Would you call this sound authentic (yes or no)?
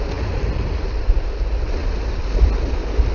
yes